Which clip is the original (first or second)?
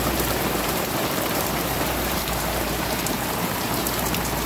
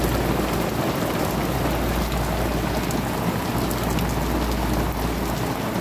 second